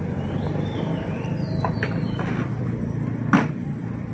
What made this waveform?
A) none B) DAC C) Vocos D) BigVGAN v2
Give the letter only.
D